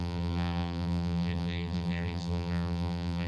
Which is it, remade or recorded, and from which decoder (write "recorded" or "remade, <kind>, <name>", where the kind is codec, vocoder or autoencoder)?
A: remade, vocoder, BigVGAN v2